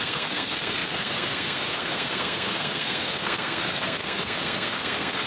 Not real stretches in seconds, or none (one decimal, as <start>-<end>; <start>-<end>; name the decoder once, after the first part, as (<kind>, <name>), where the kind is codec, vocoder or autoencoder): 0.0-5.3 (codec, SNAC)